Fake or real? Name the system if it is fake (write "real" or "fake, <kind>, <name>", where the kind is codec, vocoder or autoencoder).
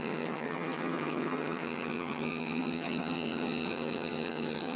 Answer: fake, vocoder, HiFi-GAN